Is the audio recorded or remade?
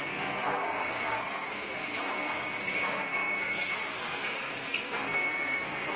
remade